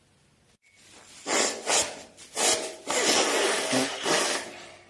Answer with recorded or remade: recorded